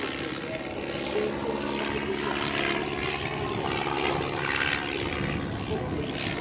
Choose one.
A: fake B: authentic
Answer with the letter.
B